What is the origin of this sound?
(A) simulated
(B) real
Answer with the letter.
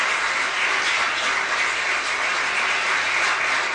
B